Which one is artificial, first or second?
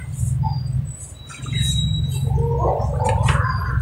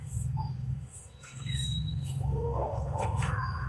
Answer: second